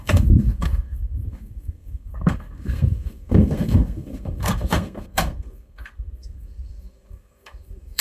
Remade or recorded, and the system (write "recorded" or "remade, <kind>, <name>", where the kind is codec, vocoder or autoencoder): remade, codec, SNAC